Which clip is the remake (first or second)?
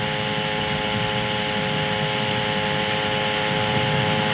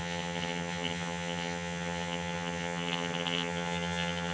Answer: second